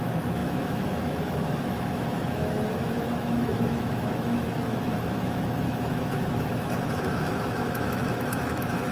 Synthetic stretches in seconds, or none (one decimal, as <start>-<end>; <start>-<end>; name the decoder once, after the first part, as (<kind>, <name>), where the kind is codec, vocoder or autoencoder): 0.0-8.9 (autoencoder, DAC-VAE)

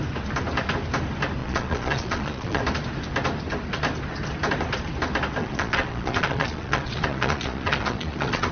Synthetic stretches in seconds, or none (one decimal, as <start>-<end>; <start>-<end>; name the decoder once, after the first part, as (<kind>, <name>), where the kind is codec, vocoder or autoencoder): 1.4-2.6 (vocoder, Vocos); 5.4-8.5

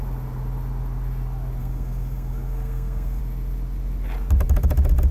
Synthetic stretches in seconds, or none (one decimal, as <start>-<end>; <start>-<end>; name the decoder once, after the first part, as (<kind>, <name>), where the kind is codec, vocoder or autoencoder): 1.6-3.2 (codec, SNAC)

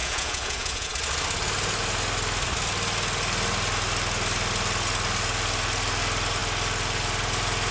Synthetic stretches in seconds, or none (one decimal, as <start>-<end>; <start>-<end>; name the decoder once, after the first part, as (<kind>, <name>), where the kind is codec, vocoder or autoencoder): 0.0-0.9 (vocoder, Vocos)